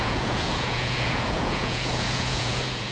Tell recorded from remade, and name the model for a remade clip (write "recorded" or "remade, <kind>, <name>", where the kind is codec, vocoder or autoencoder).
remade, vocoder, Vocos